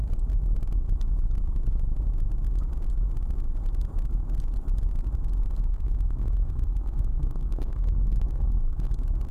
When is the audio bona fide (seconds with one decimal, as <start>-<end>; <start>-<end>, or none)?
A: 0.0-5.7; 8.9-9.3

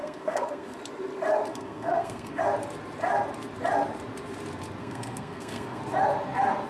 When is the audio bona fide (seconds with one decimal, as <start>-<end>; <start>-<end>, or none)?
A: 0.8-1.5; 2.4-4.8; 5.8-6.7

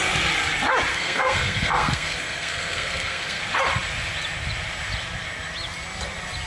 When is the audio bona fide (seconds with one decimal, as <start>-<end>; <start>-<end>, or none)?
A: 0.0-0.9; 3.4-6.5